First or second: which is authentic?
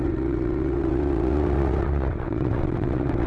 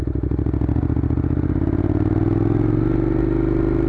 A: second